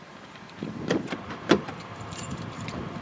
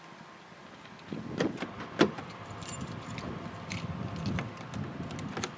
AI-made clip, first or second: first